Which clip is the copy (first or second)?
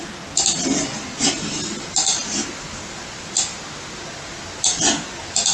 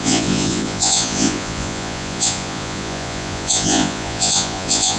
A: second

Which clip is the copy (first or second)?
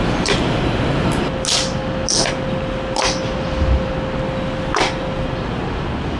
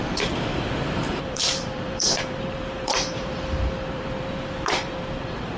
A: second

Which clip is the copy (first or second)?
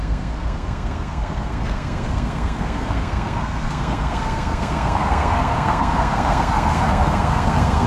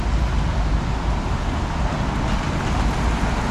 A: first